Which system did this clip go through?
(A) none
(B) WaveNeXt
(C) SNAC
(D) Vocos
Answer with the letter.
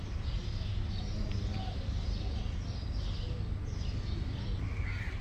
A